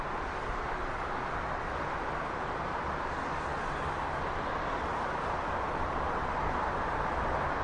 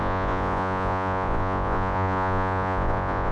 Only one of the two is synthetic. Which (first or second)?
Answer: second